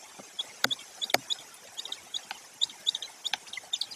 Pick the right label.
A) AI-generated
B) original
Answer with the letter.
B